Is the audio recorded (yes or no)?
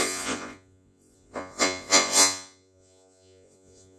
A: no